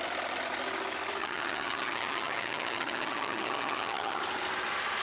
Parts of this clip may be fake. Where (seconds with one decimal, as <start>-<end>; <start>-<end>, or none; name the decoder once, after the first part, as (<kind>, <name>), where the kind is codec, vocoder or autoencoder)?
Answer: 1.2-4.2 (vocoder, HiFi-GAN)